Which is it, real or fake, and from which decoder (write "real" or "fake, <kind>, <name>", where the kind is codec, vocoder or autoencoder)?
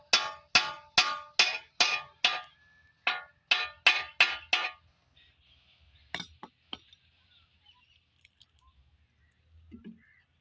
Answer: real